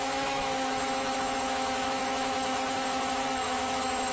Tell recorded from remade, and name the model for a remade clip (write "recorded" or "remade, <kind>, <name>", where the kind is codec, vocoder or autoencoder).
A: remade, autoencoder, DAC-VAE